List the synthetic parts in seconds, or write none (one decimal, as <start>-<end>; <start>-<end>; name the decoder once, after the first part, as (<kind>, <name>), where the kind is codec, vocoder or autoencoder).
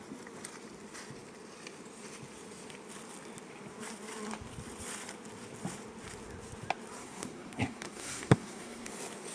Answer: 7.0-8.9 (codec, SNAC)